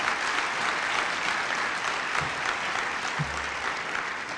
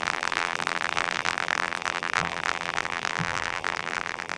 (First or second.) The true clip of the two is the first